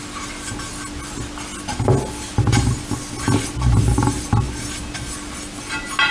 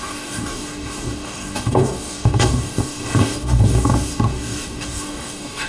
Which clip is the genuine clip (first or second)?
first